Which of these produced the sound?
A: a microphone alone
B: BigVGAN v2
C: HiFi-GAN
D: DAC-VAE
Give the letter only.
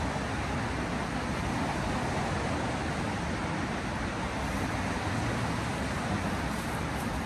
A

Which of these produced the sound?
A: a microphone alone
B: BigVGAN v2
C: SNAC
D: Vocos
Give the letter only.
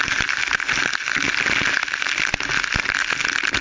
A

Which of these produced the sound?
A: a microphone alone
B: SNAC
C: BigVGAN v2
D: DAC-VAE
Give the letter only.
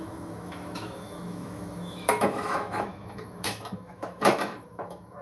D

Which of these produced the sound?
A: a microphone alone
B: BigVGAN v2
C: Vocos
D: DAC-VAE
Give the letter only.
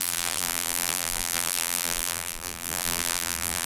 B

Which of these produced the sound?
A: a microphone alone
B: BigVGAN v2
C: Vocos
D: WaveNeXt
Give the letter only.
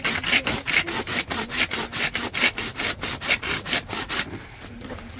A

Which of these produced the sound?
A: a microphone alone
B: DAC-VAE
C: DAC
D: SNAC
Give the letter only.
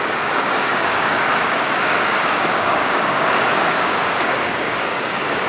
C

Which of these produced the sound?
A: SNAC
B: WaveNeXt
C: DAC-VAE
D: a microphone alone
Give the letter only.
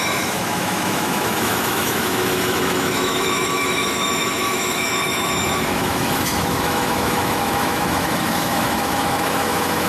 C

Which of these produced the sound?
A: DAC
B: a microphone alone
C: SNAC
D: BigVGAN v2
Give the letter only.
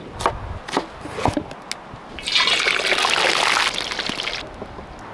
B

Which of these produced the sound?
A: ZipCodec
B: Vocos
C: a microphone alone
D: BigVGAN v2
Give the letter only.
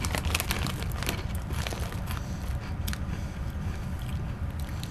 C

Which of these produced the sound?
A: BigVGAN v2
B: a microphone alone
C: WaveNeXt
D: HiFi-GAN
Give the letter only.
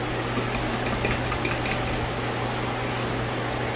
B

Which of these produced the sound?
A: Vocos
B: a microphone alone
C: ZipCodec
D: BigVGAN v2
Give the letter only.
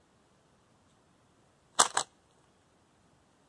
D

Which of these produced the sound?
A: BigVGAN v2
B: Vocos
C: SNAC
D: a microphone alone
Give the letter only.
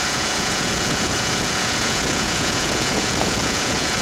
B